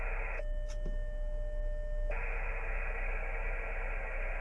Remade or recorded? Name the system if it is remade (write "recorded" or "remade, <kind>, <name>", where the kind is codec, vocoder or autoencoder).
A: recorded